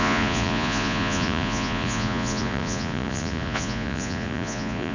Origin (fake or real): fake